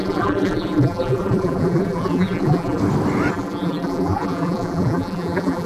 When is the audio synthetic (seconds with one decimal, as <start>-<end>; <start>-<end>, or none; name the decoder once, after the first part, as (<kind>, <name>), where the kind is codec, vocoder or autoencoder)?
0.0-2.8 (vocoder, BigVGAN v2); 3.3-5.7